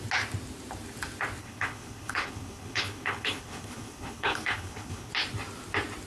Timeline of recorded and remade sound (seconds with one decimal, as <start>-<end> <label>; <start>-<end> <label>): 0.0-1.4 recorded; 1.4-5.1 remade; 5.1-6.1 recorded